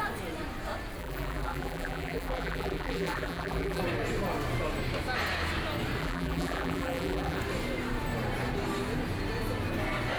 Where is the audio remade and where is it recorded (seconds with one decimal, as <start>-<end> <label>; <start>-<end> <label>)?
0.0-1.0 recorded; 1.0-3.8 remade; 3.8-6.0 recorded; 6.0-7.4 remade; 7.4-10.2 recorded

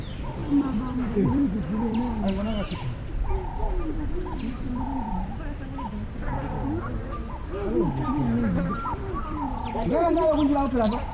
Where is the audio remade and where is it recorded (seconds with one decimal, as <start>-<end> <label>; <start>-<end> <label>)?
0.0-0.4 recorded; 0.4-2.2 remade; 2.2-8.9 recorded; 8.9-10.3 remade; 10.3-11.1 recorded

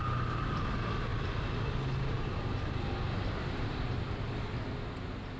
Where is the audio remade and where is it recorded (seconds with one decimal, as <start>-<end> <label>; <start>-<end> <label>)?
0.0-5.4 recorded

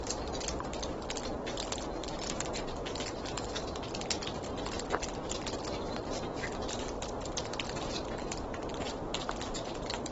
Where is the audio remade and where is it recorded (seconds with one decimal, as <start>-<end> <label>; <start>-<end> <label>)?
0.0-8.7 recorded; 8.7-9.2 remade; 9.2-10.1 recorded

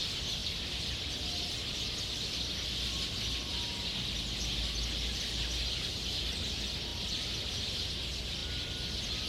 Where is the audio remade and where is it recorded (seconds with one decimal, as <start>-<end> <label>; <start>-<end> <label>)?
0.0-6.9 recorded; 6.9-7.9 remade; 7.9-8.4 recorded; 8.4-8.9 remade; 8.9-9.3 recorded

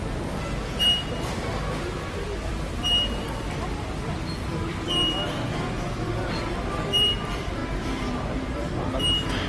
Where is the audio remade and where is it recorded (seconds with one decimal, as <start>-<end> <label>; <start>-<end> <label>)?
0.0-2.5 recorded; 2.5-3.3 remade; 3.3-9.5 recorded